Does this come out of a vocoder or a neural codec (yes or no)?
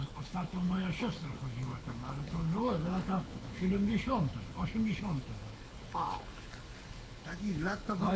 yes